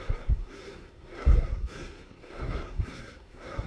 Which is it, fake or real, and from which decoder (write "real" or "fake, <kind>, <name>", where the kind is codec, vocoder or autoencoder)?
fake, codec, SNAC